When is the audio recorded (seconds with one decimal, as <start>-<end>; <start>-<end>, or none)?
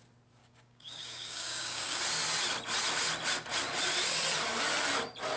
0.0-0.4; 2.0-5.4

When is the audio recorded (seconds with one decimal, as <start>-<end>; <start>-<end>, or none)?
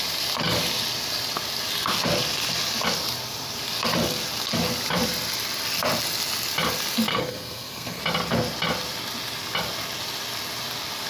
0.0-7.1; 8.0-11.1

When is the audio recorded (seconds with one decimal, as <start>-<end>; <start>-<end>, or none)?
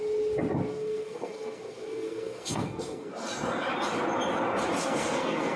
0.0-0.7; 3.1-4.8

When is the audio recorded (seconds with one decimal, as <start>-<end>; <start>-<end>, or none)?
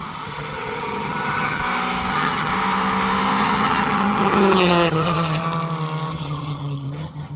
1.6-2.1; 2.5-3.4; 5.4-6.1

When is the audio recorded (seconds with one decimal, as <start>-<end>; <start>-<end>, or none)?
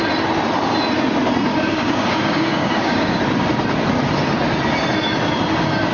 0.0-1.5; 3.2-5.9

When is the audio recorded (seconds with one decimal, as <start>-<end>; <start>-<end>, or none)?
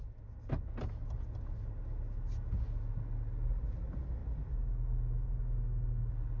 0.0-6.4